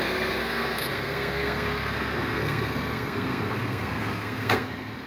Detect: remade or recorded remade